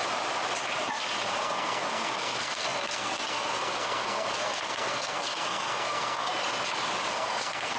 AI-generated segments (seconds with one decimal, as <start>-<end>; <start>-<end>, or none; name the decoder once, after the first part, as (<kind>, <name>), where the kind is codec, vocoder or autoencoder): 1.3-6.3 (codec, SNAC); 7.1-7.8